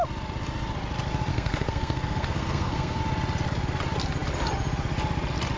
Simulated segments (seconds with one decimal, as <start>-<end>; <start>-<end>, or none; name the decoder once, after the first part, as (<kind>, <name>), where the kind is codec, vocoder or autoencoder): 1.3-3.0 (codec, SNAC)